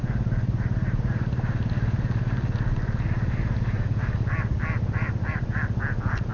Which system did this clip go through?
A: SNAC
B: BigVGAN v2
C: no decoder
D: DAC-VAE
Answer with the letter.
C